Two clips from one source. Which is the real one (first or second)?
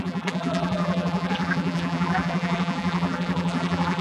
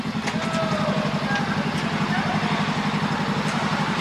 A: second